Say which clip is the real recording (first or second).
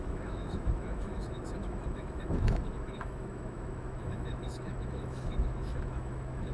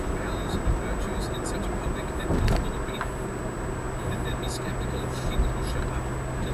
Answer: second